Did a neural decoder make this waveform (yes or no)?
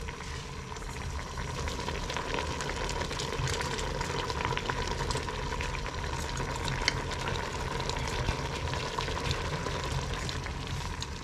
no